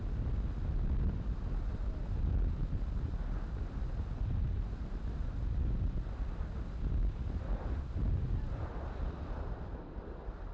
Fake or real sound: real